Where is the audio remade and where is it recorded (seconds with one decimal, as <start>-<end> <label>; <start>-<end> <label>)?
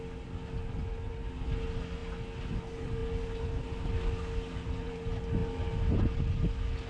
0.0-6.9 recorded